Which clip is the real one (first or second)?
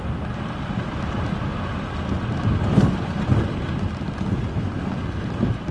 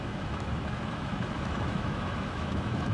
first